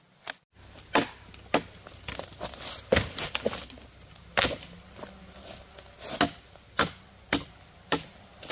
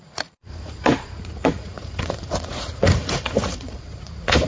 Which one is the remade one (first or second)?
second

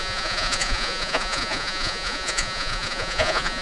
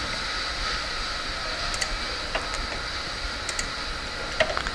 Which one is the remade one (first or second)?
first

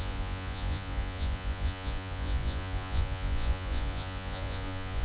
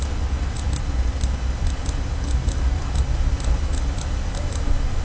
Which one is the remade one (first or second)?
first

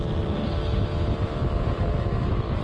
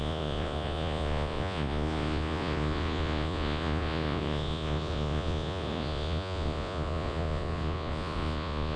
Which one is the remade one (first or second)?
second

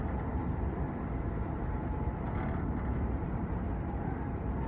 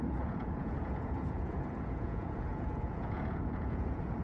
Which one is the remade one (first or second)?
second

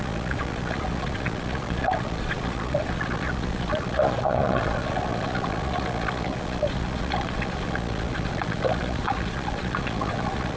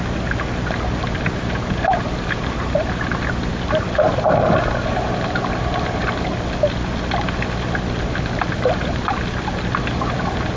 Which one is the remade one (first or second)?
first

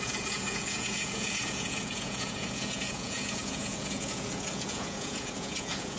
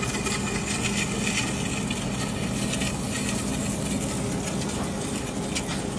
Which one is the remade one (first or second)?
first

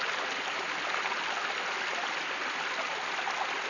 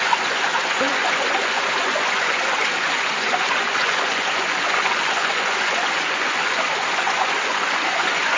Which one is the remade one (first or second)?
second